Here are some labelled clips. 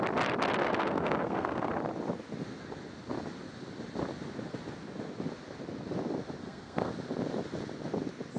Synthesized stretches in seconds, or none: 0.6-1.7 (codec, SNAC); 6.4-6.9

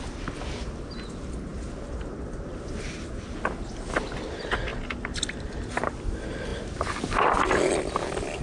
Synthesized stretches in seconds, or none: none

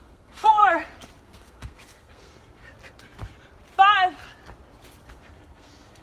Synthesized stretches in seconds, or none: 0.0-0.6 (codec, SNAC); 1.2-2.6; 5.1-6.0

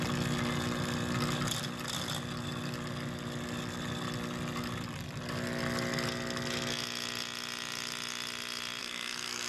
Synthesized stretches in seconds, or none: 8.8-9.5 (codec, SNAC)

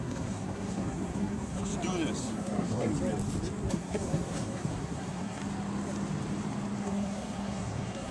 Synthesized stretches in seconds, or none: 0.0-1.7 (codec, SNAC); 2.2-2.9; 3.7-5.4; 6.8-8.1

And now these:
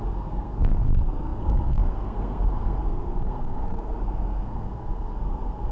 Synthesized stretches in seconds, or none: 0.0-5.7 (codec, SNAC)

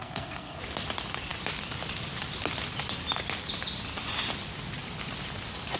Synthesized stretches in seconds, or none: 0.0-0.6 (codec, SNAC)